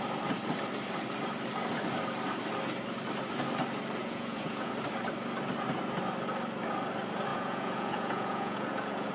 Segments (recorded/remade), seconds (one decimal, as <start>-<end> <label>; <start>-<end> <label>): 0.0-4.0 recorded; 4.0-4.7 remade; 4.7-7.3 recorded; 7.3-9.1 remade